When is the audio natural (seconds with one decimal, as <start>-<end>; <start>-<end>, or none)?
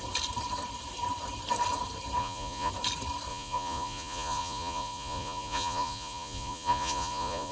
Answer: 0.0-2.2; 2.7-3.3